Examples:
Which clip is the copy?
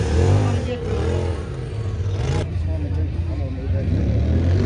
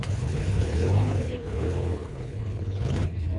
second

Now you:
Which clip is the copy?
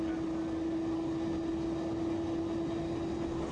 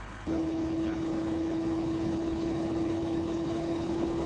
second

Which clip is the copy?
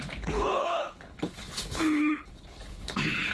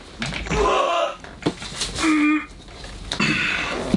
first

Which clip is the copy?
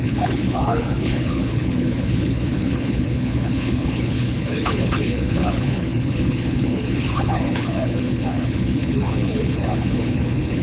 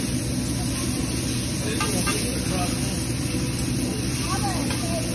first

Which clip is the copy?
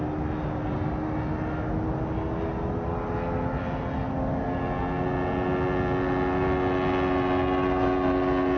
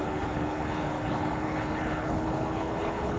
second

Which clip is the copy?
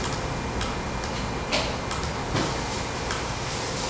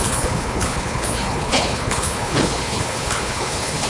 second